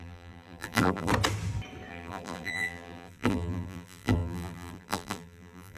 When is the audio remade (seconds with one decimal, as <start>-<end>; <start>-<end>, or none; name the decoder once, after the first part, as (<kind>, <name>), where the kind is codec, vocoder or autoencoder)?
0.0-1.1 (vocoder, BigVGAN v2); 1.9-5.8